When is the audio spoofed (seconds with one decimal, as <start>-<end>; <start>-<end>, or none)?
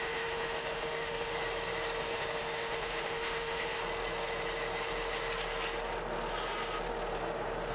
0.0-1.3; 2.0-3.8